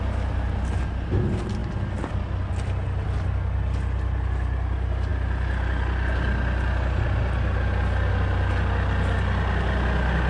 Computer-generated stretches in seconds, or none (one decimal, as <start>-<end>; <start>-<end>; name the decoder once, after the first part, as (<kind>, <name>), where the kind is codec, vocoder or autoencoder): none